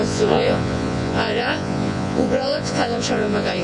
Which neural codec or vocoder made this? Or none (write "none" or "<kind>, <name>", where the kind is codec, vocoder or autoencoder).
vocoder, Vocos